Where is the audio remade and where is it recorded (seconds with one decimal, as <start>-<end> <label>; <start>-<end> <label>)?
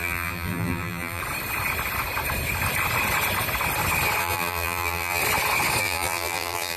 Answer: 0.0-1.2 remade; 1.2-4.2 recorded; 4.2-5.2 remade; 5.2-5.8 recorded; 5.8-6.8 remade